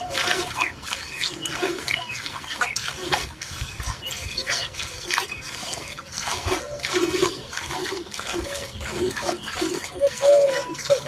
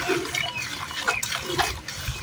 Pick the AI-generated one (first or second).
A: first